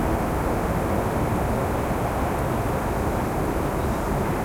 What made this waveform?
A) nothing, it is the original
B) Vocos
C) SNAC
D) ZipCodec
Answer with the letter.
A